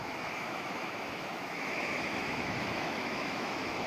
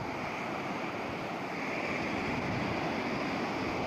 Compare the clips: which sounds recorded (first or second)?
second